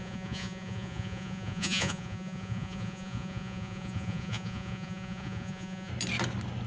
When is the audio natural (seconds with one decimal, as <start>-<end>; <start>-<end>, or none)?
5.9-6.7